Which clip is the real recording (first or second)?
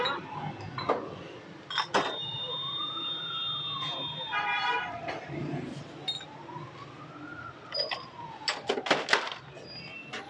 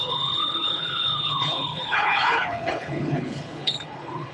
first